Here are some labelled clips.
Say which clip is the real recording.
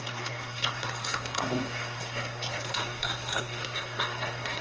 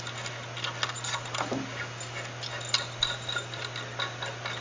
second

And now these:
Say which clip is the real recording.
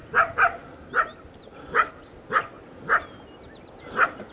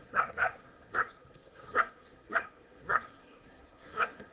first